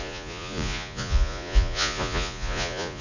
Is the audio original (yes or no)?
no